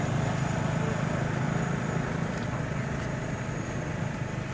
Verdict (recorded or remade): recorded